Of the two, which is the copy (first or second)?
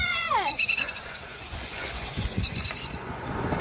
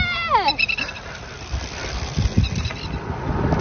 first